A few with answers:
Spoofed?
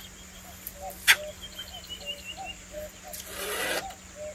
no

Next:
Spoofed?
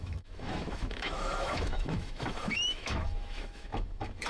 yes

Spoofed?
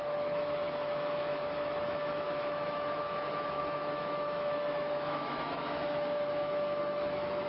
yes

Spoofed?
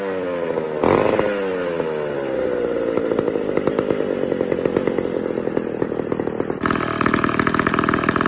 no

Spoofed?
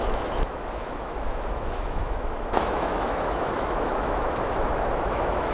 yes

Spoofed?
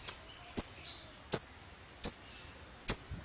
no